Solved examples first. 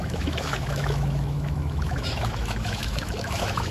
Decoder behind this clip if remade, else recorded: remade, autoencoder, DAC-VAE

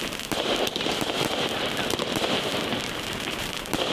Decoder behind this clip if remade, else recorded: recorded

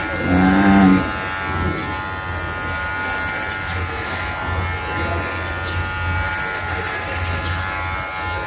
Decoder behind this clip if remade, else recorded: recorded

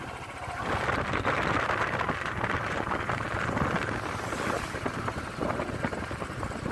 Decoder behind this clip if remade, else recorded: recorded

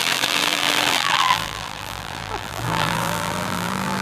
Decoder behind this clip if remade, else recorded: remade, vocoder, BigVGAN v2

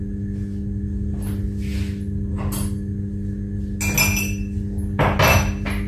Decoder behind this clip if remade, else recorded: recorded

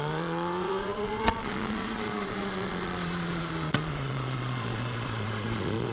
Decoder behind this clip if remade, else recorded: remade, vocoder, Vocos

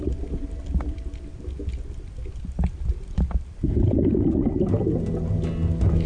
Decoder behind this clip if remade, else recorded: recorded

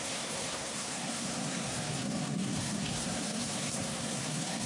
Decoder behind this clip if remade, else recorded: remade, codec, SNAC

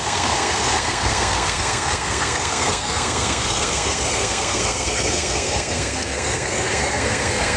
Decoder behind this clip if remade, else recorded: remade, codec, SNAC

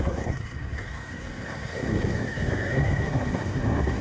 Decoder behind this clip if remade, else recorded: remade, codec, SNAC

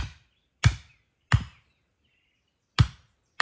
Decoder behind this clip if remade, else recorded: recorded